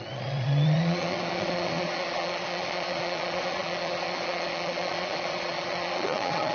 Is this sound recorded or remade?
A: remade